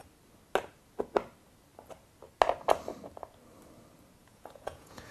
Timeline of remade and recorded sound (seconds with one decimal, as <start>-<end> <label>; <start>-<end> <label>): 0.0-4.2 recorded; 4.2-5.1 remade